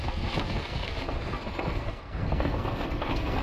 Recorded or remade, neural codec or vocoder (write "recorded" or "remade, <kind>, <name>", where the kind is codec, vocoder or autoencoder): remade, codec, SNAC